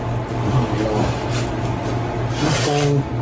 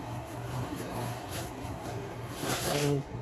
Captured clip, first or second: first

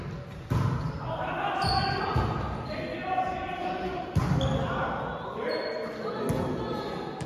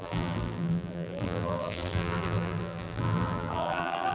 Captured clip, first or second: first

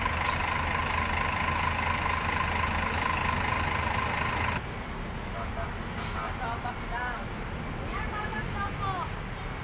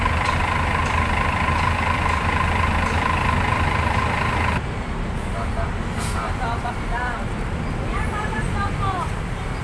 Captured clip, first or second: first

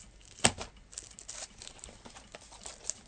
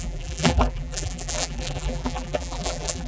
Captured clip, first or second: first